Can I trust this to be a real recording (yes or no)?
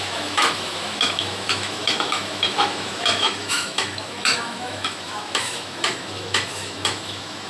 no